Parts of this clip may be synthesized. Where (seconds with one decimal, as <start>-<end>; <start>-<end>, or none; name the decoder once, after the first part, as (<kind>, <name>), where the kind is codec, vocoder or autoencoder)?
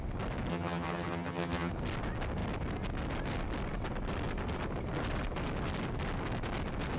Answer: 0.5-1.7 (vocoder, HiFi-GAN)